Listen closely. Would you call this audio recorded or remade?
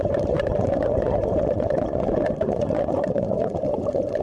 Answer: remade